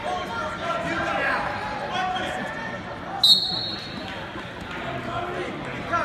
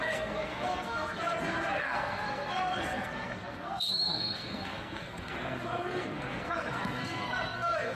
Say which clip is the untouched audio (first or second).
first